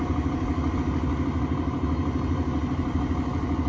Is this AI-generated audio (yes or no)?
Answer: no